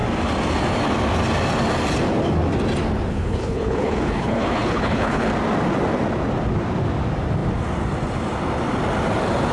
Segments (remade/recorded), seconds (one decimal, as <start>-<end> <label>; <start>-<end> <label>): 0.0-3.1 recorded; 3.1-5.3 remade; 5.3-9.5 recorded